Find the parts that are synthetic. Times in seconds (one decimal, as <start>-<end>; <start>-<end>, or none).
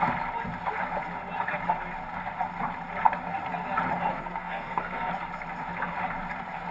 4.1-5.1